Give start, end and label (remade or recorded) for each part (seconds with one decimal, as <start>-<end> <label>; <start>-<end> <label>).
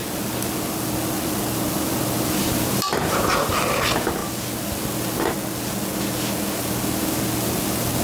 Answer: 0.0-2.4 recorded; 2.4-3.6 remade; 3.6-8.0 recorded